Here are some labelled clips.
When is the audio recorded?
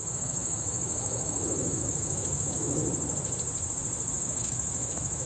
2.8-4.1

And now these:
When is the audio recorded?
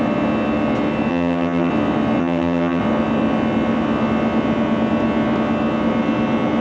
0.0-1.1; 1.7-2.2; 2.8-6.6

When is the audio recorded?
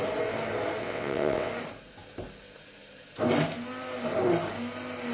0.0-0.8; 1.5-5.1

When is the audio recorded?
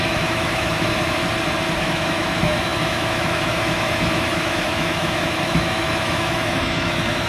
1.2-1.8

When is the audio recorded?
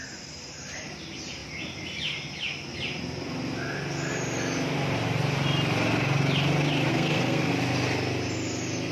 0.0-6.9; 7.5-8.9